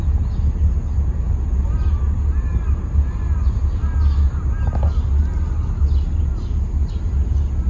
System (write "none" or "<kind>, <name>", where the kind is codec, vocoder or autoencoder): none